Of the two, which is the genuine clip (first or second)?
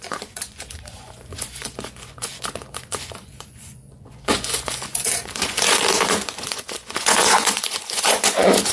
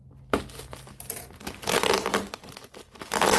second